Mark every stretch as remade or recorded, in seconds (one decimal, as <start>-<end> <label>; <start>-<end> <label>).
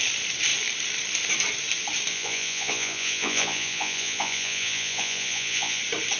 0.0-2.1 recorded; 2.1-5.8 remade; 5.8-6.2 recorded